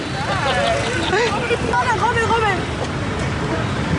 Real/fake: real